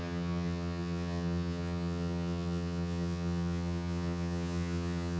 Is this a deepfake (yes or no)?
yes